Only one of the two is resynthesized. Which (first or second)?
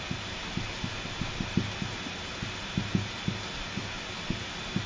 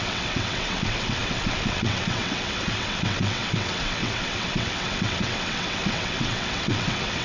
second